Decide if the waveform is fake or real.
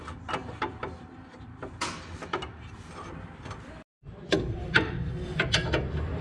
fake